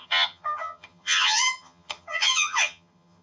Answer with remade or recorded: remade